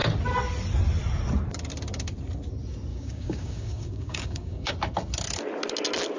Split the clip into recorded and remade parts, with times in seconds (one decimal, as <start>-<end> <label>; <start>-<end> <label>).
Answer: 0.0-2.9 recorded; 2.9-4.7 remade; 4.7-6.2 recorded